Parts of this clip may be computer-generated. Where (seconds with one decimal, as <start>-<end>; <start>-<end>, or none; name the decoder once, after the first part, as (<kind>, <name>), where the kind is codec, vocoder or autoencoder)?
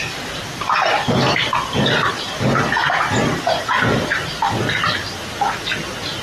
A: 0.8-4.5 (vocoder, BigVGAN v2)